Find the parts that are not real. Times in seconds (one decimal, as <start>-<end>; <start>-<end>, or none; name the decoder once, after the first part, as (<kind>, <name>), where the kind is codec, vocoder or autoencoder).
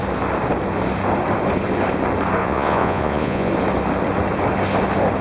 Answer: 2.4-3.5 (vocoder, Vocos)